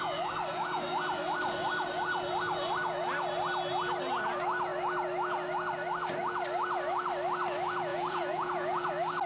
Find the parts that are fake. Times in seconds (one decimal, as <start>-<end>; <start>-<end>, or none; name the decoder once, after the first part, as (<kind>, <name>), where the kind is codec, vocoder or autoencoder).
7.9-8.9 (vocoder, Vocos)